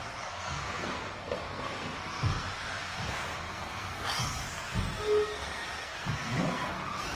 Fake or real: fake